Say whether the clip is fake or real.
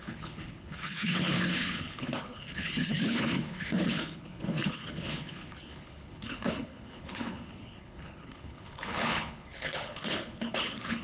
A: fake